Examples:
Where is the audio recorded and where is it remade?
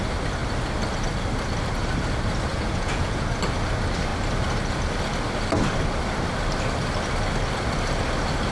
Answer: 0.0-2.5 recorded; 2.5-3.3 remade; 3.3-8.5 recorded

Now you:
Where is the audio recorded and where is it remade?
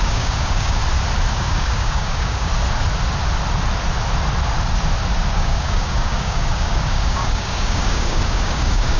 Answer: 0.0-0.8 remade; 0.8-1.3 recorded; 1.3-2.5 remade; 2.5-5.3 recorded; 5.3-9.0 remade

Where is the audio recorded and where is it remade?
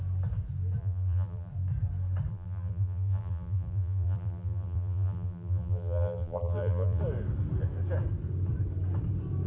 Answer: 0.0-0.8 recorded; 0.8-1.5 remade; 1.5-2.3 recorded; 2.3-7.0 remade; 7.0-9.5 recorded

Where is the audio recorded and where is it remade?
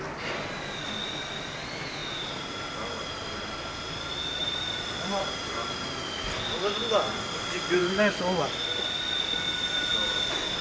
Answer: 0.0-2.0 recorded; 2.0-2.7 remade; 2.7-4.4 recorded; 4.4-5.3 remade; 5.3-10.6 recorded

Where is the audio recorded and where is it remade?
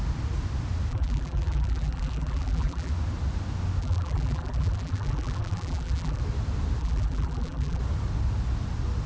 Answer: 0.0-0.9 recorded; 0.9-2.9 remade; 2.9-3.8 recorded; 3.8-6.2 remade; 6.2-6.8 recorded; 6.8-7.8 remade; 7.8-9.1 recorded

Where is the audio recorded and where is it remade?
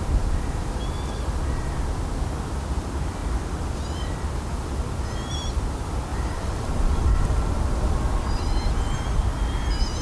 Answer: 0.0-3.2 recorded; 3.2-4.7 remade; 4.7-6.1 recorded; 6.1-8.2 remade; 8.2-10.0 recorded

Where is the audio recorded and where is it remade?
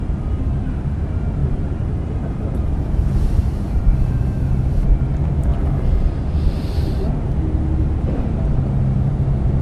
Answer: 0.0-1.4 recorded; 1.4-4.2 remade; 4.2-5.5 recorded; 5.5-7.3 remade; 7.3-8.5 recorded; 8.5-9.1 remade; 9.1-9.6 recorded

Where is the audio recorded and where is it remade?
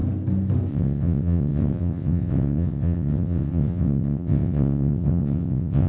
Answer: 0.0-0.7 recorded; 0.7-5.9 remade